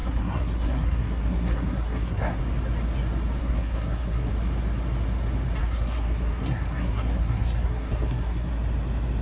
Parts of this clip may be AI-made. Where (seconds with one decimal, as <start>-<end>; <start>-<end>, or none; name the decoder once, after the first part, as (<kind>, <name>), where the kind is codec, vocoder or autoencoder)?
0.0-2.4 (codec, SNAC); 3.4-4.3; 5.6-8.5